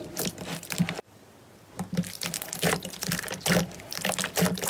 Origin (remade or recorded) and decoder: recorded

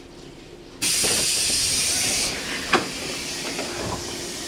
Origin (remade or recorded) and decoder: remade, vocoder, BigVGAN v2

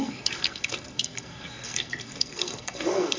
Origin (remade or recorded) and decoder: remade, codec, SNAC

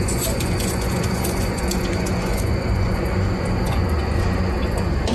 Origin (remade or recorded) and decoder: remade, vocoder, Vocos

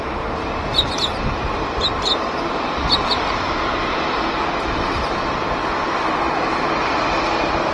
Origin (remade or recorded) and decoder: recorded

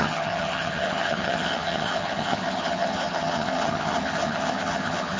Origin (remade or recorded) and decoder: remade, vocoder, HiFi-GAN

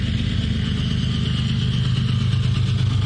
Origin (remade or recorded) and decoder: recorded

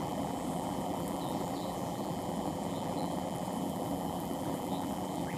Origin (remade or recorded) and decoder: remade, vocoder, BigVGAN v2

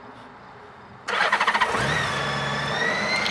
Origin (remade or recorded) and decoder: recorded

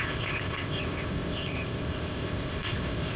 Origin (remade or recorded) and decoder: remade, codec, ZipCodec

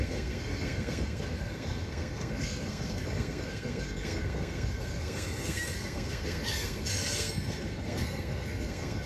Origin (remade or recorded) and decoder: remade, codec, SNAC